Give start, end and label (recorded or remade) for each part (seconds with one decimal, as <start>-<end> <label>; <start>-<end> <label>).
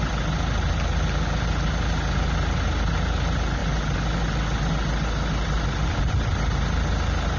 0.0-7.4 recorded